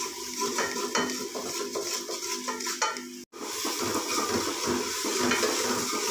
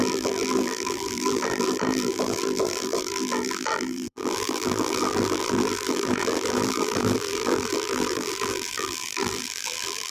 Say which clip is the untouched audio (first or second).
first